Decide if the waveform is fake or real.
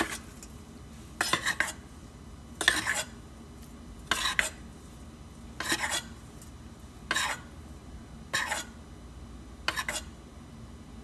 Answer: real